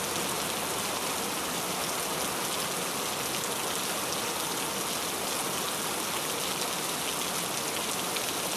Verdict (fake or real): real